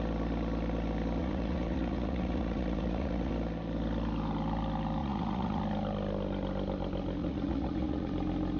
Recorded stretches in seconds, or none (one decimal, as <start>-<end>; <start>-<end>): 0.0-1.2; 3.3-5.0; 5.6-7.2; 8.1-8.6